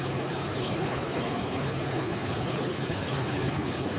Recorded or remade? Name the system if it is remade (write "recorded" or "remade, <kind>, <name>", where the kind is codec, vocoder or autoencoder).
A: remade, codec, HILCodec